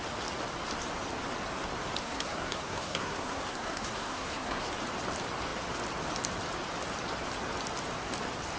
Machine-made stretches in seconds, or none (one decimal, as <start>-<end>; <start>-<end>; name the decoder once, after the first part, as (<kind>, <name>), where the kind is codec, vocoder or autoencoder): 2.0-4.7 (codec, SNAC)

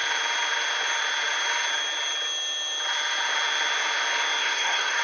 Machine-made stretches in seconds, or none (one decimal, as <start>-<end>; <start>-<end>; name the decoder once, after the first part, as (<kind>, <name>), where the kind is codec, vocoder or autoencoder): 4.4-5.0 (codec, SNAC)

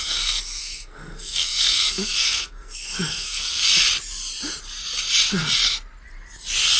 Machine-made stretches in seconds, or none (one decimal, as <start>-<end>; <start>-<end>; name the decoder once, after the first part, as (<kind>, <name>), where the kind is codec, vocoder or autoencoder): 0.0-3.6 (codec, SNAC)

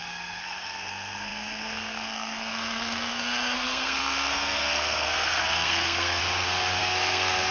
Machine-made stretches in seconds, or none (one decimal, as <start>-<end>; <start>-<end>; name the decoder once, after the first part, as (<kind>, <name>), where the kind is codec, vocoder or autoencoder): 0.0-6.2 (codec, SNAC); 6.8-7.5